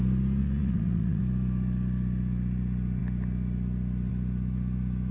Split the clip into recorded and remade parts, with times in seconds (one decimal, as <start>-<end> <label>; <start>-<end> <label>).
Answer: 0.0-0.4 recorded; 0.4-1.2 remade; 1.2-5.1 recorded